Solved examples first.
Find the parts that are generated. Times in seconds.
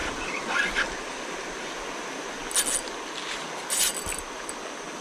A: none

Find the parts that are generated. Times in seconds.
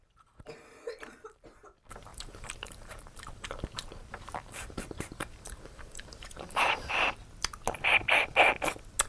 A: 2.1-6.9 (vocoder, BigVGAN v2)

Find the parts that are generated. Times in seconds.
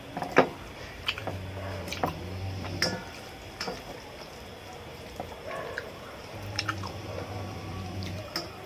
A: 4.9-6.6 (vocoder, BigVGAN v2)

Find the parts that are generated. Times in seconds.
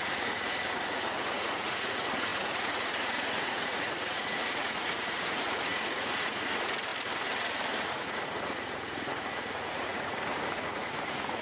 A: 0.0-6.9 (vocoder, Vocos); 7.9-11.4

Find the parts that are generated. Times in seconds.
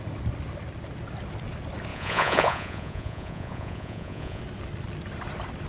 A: 1.9-4.4 (vocoder, Vocos)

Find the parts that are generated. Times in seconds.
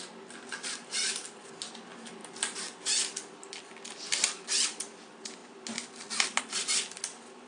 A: none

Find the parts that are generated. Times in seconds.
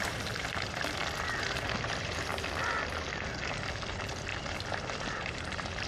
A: 0.0-1.0 (vocoder, BigVGAN v2); 1.8-2.3; 3.9-4.3; 5.1-5.9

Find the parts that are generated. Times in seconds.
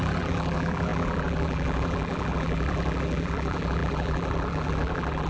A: 0.0-5.3 (vocoder, BigVGAN v2)